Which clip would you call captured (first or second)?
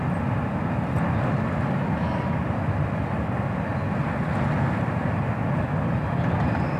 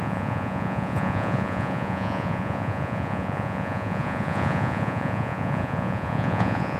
first